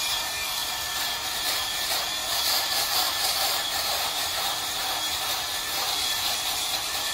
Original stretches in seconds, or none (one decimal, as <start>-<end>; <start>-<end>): none